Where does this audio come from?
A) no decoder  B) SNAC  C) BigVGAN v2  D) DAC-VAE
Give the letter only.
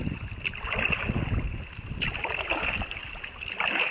A